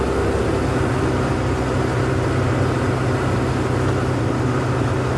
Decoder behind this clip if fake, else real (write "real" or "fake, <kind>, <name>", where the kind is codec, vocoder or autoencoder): real